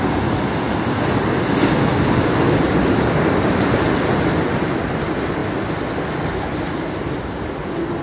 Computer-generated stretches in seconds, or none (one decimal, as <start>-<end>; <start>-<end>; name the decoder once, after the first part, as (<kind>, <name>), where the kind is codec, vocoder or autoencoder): none

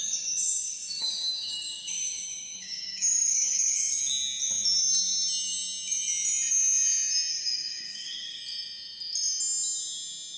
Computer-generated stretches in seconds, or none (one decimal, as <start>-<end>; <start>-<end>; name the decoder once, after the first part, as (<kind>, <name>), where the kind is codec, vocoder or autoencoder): 0.0-4.0 (codec, DAC); 7.3-8.4

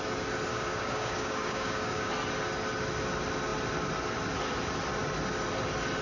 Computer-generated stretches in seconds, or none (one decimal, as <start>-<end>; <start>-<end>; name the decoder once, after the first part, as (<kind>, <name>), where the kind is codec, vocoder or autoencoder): 0.5-2.1 (codec, DAC)

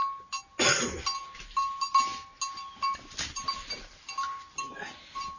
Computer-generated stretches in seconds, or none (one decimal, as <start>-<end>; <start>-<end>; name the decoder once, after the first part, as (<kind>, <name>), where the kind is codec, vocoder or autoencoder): none

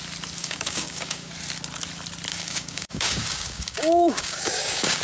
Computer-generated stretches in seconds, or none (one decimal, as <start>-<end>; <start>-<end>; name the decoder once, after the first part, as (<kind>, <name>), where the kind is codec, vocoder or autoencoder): 0.4-1.3 (codec, DAC); 2.3-5.0

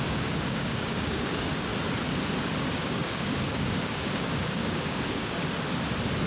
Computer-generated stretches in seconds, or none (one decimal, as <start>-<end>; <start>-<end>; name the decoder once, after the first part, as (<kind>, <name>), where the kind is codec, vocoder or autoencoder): 0.0-1.7 (codec, DAC); 2.8-5.4

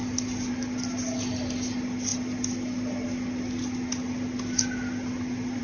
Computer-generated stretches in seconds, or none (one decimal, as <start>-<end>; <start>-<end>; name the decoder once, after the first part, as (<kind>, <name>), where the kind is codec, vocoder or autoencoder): none